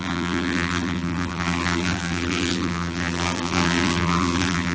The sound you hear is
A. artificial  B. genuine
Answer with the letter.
A